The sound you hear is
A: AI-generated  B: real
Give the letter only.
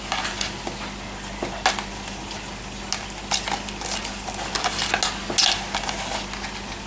B